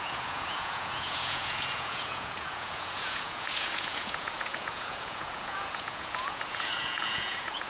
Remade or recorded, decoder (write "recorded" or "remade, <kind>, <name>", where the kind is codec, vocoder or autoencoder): remade, vocoder, Vocos